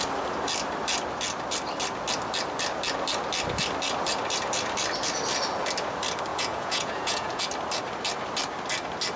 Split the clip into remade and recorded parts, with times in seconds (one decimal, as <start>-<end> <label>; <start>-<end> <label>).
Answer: 0.0-6.3 recorded; 6.3-7.4 remade; 7.4-9.2 recorded